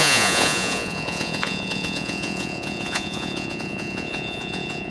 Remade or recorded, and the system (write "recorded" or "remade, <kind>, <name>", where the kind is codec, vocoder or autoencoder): remade, vocoder, Vocos